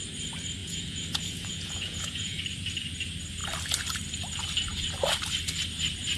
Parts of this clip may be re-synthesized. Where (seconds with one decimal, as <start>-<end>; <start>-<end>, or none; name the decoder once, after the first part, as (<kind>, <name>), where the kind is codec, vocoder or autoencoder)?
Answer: 0.6-2.4 (vocoder, Vocos)